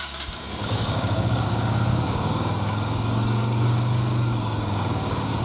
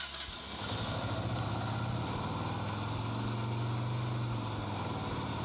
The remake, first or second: first